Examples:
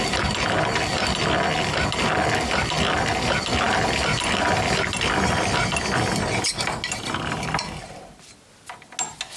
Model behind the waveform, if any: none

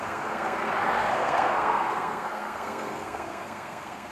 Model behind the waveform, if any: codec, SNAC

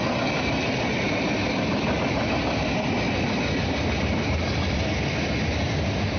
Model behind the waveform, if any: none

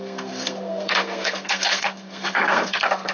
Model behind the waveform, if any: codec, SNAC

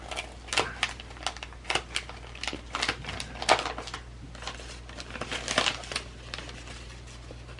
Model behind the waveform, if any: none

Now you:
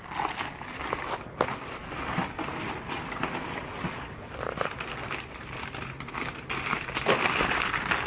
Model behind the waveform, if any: none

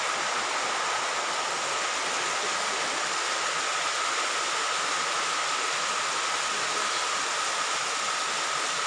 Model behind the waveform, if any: none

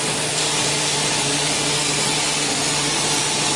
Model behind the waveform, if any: none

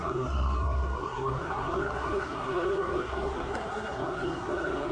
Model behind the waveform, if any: codec, SNAC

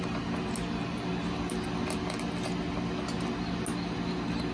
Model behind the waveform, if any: none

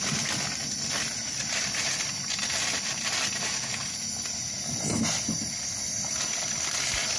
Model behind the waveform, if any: none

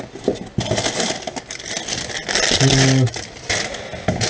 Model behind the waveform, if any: none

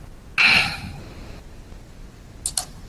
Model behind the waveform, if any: none